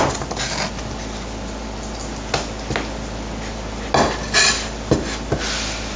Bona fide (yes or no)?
yes